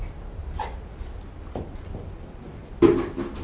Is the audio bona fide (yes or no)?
yes